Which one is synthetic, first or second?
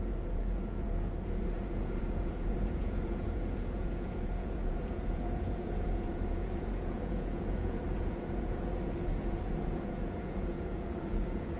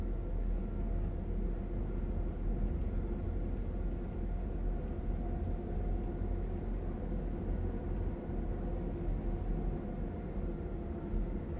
first